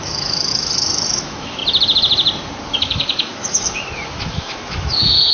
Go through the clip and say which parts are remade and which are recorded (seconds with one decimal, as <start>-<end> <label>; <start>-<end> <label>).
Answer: 0.0-1.6 remade; 1.6-2.6 recorded; 2.6-5.3 remade